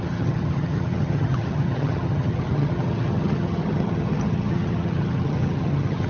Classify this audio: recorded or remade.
remade